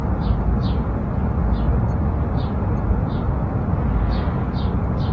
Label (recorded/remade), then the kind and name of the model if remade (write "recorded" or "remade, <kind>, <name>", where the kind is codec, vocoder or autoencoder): recorded